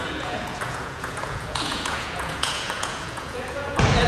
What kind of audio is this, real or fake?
fake